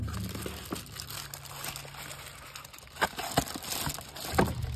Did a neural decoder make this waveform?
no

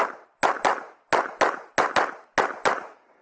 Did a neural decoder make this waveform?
no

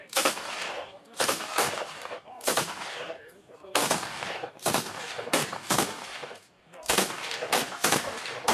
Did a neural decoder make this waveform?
yes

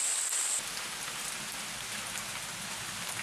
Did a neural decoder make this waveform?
no